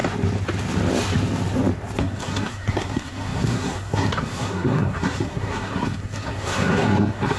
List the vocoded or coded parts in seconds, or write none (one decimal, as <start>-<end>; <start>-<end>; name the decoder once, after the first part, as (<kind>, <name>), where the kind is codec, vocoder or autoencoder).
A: 2.0-7.4 (codec, SNAC)